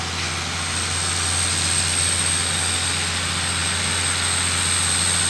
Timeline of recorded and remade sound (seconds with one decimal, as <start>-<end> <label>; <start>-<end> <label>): 0.0-5.3 recorded